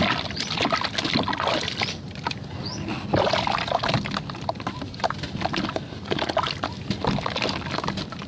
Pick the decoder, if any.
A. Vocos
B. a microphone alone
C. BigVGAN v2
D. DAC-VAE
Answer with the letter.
B